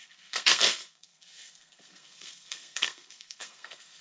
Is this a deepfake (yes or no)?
yes